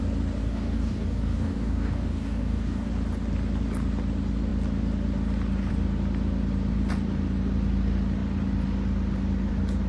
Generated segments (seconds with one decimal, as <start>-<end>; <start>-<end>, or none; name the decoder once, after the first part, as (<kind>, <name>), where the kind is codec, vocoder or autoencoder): 0.4-2.9 (codec, DAC)